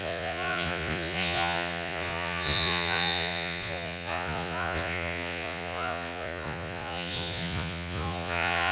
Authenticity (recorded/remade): remade